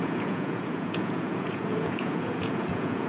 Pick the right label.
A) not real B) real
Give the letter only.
A